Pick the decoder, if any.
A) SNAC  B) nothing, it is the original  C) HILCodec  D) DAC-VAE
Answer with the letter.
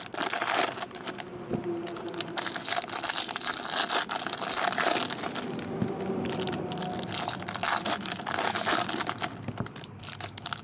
B